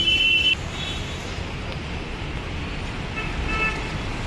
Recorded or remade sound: recorded